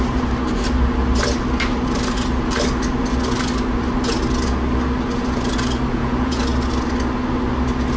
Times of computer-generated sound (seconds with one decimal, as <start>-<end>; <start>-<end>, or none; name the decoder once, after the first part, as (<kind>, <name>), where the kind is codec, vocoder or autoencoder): 5.9-6.4 (vocoder, Vocos)